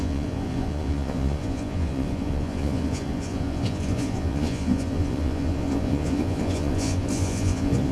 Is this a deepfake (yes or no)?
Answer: yes